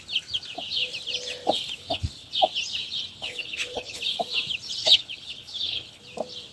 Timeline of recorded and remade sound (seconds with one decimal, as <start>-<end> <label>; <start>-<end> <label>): 0.0-1.8 recorded; 1.8-2.3 remade; 2.3-3.1 recorded; 3.1-4.0 remade; 4.0-4.8 recorded; 4.8-6.0 remade; 6.0-6.5 recorded